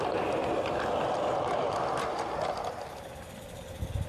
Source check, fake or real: real